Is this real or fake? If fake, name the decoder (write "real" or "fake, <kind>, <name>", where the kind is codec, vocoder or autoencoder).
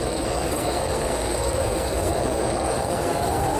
fake, codec, SNAC